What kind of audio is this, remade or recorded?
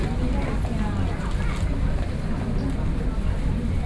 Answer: recorded